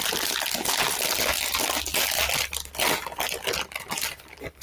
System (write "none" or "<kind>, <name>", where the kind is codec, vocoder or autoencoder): none